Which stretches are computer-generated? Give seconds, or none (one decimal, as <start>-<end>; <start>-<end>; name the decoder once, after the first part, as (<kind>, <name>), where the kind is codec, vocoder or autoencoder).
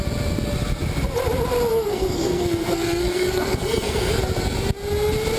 1.7-4.2 (codec, SNAC)